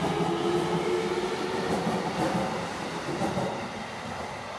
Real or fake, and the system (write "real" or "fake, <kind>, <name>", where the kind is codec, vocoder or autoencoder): real